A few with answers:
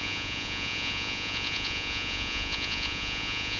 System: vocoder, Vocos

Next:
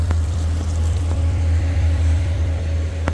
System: vocoder, BigVGAN v2